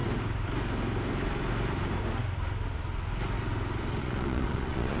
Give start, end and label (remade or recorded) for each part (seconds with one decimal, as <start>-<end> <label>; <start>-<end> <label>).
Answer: 0.0-4.0 recorded; 4.0-5.0 remade